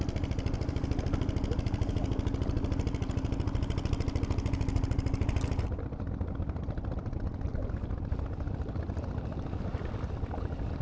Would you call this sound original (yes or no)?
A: yes